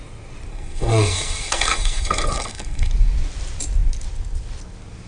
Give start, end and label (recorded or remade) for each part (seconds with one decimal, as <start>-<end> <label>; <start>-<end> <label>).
0.0-0.5 recorded; 0.5-2.9 remade; 2.9-5.1 recorded